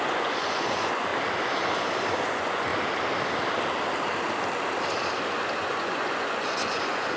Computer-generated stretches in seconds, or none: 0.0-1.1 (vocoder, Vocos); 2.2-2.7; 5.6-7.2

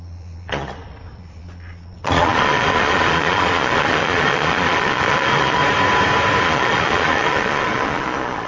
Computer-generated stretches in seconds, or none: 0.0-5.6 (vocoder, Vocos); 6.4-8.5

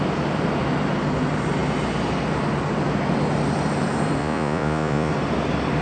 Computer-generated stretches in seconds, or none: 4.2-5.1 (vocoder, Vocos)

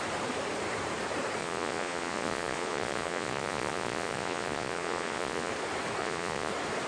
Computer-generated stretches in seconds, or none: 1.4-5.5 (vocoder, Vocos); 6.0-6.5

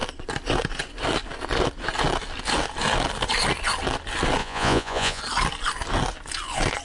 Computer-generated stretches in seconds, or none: 4.4-5.2 (vocoder, Vocos)

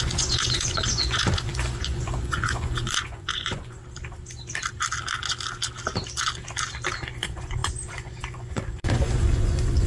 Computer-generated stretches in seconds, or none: 0.0-3.8 (vocoder, Vocos); 7.1-9.9

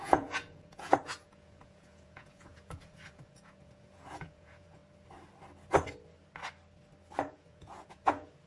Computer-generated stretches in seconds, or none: 0.0-4.8 (vocoder, Vocos); 7.2-8.5

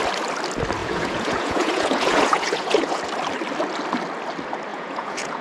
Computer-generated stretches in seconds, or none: 0.8-3.0 (vocoder, Vocos); 4.7-5.4